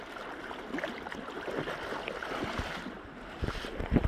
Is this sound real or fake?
real